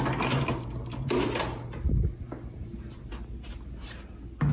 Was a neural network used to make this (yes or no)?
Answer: no